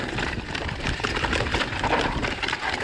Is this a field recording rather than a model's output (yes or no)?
yes